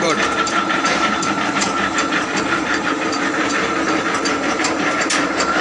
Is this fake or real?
fake